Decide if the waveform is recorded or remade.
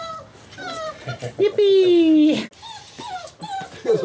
recorded